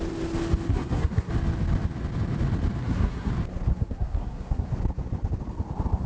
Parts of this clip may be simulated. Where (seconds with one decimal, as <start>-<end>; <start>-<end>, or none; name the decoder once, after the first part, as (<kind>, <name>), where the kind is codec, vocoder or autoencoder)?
0.7-1.3 (codec, SNAC); 2.8-3.3; 3.7-4.7